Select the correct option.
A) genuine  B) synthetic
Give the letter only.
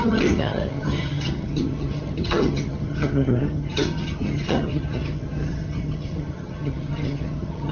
B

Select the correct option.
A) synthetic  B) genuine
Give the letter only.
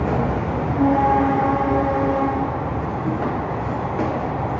B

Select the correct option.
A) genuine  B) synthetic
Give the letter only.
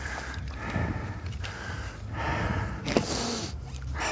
A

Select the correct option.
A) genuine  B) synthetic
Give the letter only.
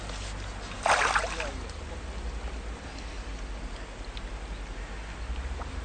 A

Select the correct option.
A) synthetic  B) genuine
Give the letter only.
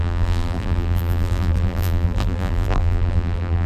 A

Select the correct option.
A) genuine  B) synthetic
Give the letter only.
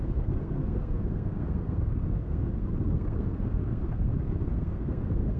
B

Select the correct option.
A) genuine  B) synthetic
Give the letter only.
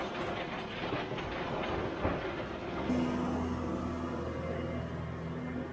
A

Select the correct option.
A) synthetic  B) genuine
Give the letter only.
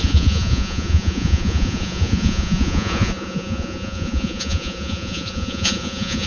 A